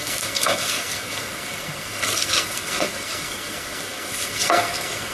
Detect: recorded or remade remade